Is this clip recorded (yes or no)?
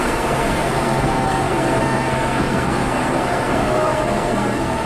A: no